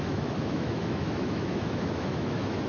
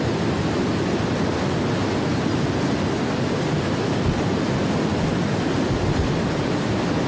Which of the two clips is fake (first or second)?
first